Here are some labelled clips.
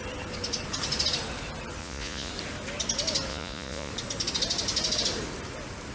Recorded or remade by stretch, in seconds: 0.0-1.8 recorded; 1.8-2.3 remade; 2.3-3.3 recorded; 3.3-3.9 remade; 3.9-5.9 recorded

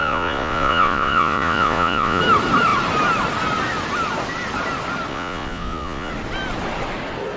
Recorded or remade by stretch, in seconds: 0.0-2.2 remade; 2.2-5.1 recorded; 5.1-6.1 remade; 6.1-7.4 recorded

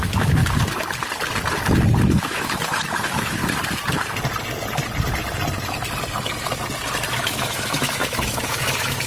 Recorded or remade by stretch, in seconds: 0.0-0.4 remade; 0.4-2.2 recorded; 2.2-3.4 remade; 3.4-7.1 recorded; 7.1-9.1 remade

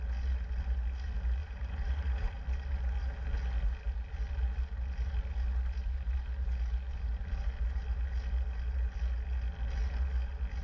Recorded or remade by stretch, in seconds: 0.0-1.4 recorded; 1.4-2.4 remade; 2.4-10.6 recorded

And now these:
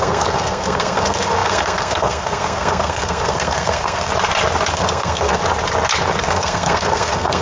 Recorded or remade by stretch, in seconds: 0.0-4.1 remade; 4.1-4.7 recorded; 4.7-5.4 remade; 5.4-6.2 recorded; 6.2-7.4 remade

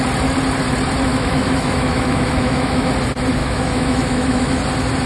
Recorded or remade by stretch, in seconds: 0.0-1.1 recorded; 1.1-2.9 remade; 2.9-3.4 recorded; 3.4-4.6 remade; 4.6-5.1 recorded